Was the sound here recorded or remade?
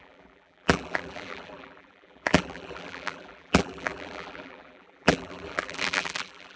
remade